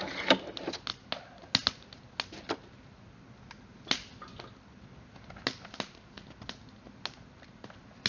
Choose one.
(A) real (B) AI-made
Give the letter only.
A